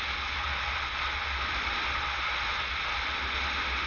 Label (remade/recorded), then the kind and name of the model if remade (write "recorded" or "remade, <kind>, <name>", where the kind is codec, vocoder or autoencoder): recorded